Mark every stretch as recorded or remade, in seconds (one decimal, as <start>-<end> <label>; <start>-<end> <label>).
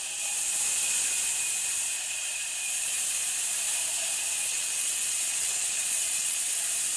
0.0-4.5 recorded; 4.5-6.6 remade; 6.6-7.0 recorded